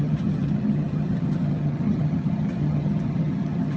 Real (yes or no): no